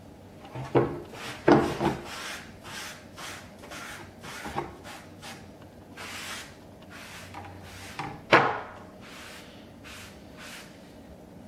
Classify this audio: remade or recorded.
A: recorded